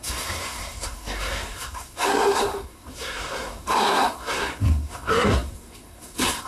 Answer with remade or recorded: remade